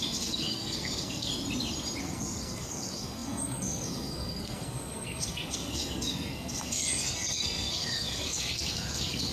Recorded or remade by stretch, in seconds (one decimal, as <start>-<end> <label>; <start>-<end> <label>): 0.0-1.3 remade; 1.3-2.0 recorded; 2.0-9.3 remade